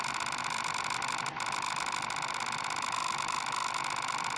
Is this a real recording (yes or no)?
yes